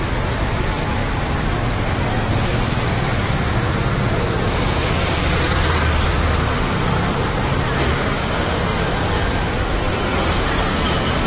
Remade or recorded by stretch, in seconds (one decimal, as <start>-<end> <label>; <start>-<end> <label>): 0.0-8.7 remade; 8.7-9.9 recorded; 9.9-11.3 remade